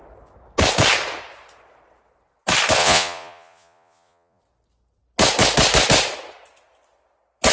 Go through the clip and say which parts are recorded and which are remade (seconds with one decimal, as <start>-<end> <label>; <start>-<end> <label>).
0.0-2.8 recorded; 2.8-4.4 remade; 4.4-7.5 recorded